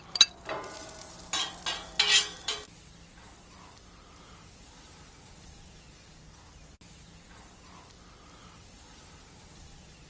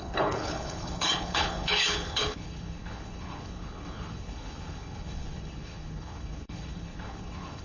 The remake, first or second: second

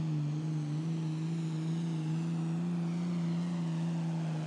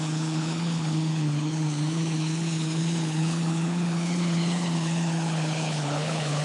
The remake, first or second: second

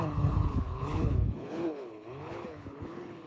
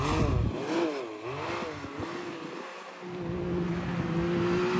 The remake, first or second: first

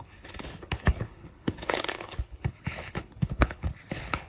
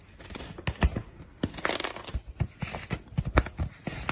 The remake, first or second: first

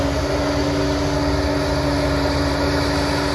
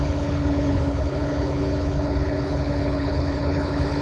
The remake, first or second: second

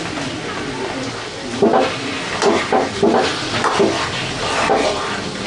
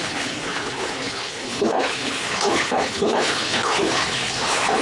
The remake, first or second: second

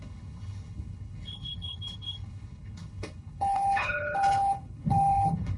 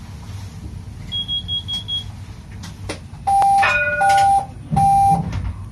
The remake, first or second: first